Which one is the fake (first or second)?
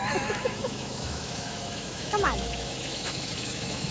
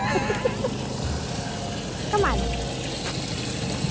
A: first